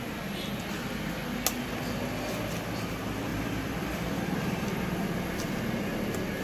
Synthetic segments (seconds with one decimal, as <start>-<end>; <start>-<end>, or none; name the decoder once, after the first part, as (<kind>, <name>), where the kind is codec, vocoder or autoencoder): 3.3-5.0 (vocoder, BigVGAN v2)